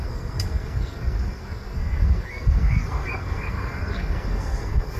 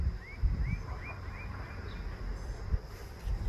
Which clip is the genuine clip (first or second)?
second